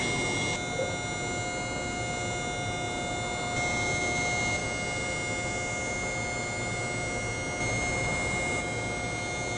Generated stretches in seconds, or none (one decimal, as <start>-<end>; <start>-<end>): none